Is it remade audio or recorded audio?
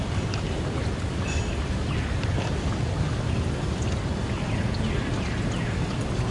recorded